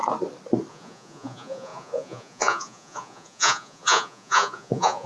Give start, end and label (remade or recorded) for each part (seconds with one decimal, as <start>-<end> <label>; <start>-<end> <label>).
0.0-0.7 recorded; 0.7-5.1 remade